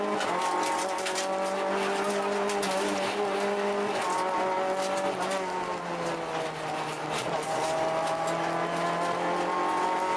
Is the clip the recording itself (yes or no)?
yes